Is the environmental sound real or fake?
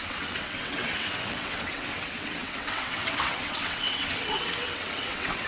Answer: fake